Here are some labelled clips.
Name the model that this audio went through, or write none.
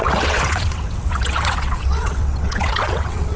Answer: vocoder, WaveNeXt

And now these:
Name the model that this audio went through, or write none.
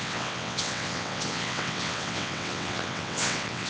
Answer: vocoder, WaveNeXt